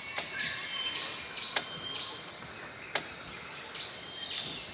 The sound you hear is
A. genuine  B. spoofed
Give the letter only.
A